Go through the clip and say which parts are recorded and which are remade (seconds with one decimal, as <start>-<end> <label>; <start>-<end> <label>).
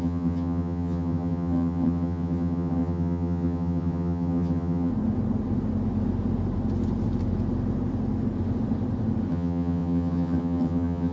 0.0-4.9 remade; 4.9-9.3 recorded; 9.3-11.1 remade